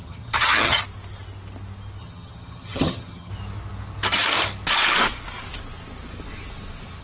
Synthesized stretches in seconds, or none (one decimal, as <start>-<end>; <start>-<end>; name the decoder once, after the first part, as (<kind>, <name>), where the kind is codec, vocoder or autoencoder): 0.0-0.8 (vocoder, HiFi-GAN); 2.0-3.3

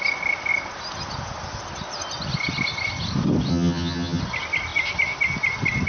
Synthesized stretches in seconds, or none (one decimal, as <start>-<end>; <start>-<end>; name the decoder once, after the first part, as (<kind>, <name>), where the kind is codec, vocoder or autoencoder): 3.5-4.2 (vocoder, HiFi-GAN)